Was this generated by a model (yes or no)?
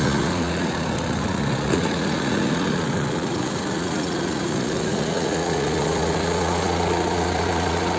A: yes